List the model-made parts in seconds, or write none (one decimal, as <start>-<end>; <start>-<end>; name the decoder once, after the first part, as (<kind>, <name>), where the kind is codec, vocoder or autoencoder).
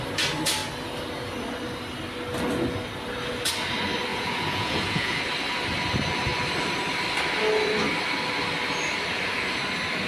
4.1-5.2 (vocoder, Vocos)